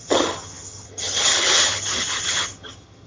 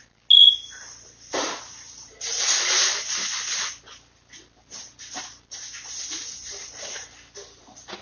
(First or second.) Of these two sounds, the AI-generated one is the first